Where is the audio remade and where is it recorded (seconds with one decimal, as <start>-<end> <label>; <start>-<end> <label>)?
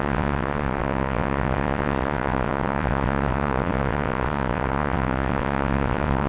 0.0-6.3 remade